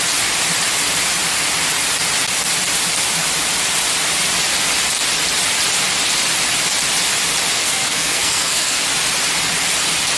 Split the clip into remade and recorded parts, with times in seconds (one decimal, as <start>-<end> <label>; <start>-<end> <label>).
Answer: 0.0-7.6 recorded; 7.6-8.8 remade; 8.8-10.2 recorded